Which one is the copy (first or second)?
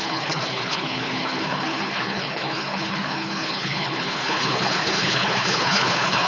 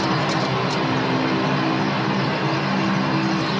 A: first